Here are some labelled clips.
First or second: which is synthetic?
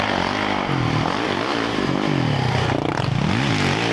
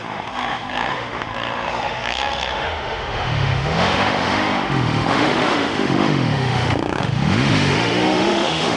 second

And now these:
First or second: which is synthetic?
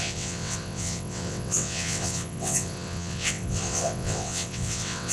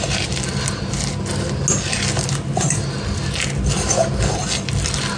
first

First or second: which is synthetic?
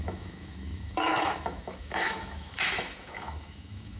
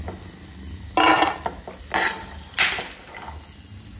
first